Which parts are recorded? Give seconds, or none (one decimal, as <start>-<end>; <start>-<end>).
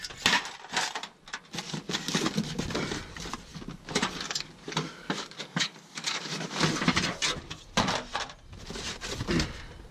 0.0-1.6; 2.6-3.5; 6.6-9.9